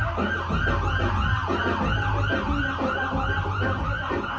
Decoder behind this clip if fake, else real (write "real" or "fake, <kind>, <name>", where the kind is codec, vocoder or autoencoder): real